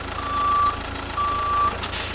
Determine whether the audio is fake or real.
real